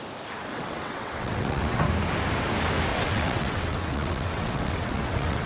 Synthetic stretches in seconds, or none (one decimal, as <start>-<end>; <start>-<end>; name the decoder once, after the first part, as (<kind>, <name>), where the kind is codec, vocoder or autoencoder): 0.5-1.8 (vocoder, WaveNeXt); 2.9-5.5